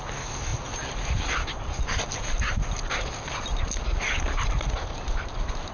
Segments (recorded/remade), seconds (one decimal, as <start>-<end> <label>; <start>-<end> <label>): 0.0-5.7 recorded